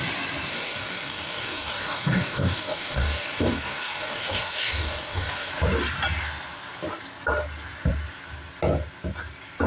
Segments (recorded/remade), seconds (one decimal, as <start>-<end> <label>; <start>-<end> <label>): 0.0-0.5 recorded; 0.5-5.5 remade; 5.5-9.7 recorded